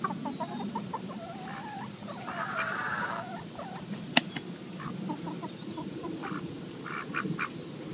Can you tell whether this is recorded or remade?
recorded